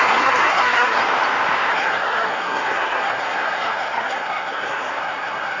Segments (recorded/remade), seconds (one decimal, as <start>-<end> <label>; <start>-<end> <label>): 0.0-1.0 remade; 1.0-1.7 recorded; 1.7-5.6 remade